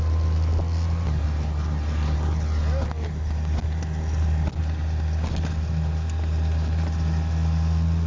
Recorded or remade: recorded